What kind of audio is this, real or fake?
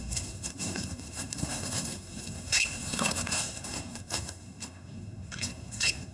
fake